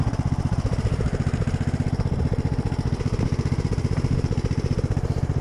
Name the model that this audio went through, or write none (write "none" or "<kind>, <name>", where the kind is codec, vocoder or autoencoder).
vocoder, BigVGAN v2